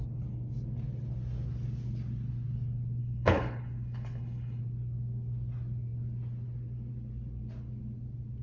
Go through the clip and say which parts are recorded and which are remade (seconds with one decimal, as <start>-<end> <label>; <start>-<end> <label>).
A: 0.0-3.0 recorded; 3.0-4.6 remade; 4.6-8.4 recorded